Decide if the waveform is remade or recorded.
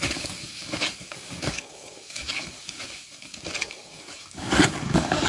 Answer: remade